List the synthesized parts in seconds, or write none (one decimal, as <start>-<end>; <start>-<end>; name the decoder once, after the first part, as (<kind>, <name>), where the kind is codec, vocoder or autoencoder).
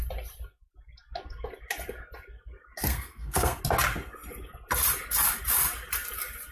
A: 2.9-3.6 (codec, SNAC)